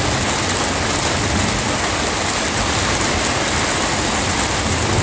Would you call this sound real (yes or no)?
yes